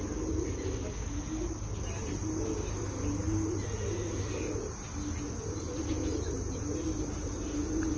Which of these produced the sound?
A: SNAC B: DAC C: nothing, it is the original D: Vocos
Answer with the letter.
C